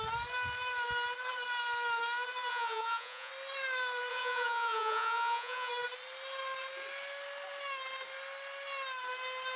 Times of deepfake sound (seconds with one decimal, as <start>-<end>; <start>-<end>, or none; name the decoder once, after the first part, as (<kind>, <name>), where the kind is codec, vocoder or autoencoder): 2.5-3.3 (vocoder, Vocos); 4.1-5.7